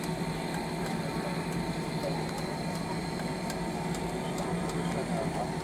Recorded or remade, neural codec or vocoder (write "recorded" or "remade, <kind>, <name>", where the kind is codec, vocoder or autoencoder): recorded